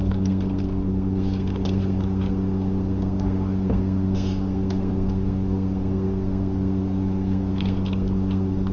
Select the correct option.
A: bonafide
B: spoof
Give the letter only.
B